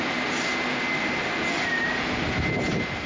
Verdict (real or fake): real